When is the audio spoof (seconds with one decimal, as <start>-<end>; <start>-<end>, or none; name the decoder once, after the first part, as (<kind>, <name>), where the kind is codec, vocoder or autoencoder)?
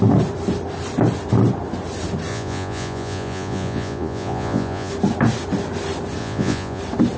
2.3-4.9 (vocoder, Vocos); 6.2-6.8